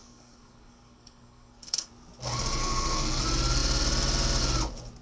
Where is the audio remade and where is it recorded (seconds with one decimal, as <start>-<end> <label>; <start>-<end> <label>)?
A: 0.0-1.9 remade; 1.9-2.6 recorded; 2.6-3.2 remade; 3.2-5.0 recorded